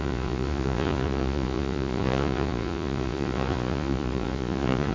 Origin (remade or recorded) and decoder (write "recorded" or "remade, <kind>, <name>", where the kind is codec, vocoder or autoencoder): remade, vocoder, Vocos